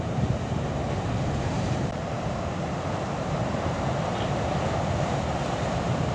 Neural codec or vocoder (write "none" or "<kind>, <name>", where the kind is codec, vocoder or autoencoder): vocoder, BigVGAN v2